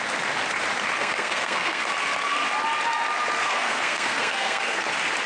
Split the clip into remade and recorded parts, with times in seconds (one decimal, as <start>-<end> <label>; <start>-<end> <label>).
0.0-1.0 recorded; 1.0-1.9 remade; 1.9-3.4 recorded; 3.4-4.8 remade; 4.8-5.3 recorded